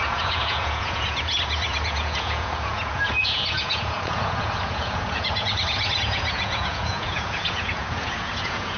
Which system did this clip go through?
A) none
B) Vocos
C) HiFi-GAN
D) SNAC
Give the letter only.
B